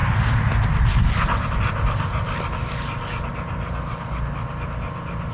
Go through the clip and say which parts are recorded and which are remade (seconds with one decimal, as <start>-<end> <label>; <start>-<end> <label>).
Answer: 0.0-5.3 recorded